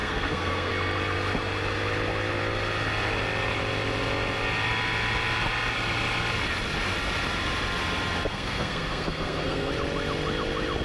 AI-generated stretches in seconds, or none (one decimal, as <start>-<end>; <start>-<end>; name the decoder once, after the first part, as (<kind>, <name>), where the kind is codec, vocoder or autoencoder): 0.0-0.7 (codec, SNAC); 8.3-9.7